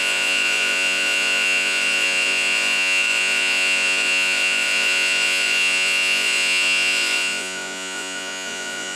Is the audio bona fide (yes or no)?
no